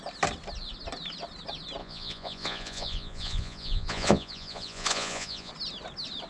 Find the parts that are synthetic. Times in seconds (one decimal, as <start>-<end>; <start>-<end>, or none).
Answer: 1.8-5.5